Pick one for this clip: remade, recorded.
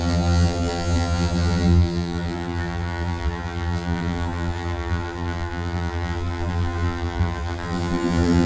remade